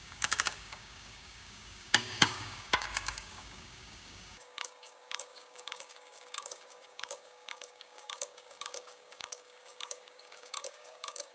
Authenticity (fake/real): fake